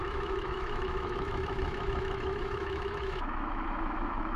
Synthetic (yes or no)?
yes